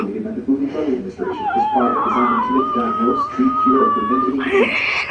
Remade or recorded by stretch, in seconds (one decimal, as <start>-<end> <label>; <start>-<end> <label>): 0.0-5.1 recorded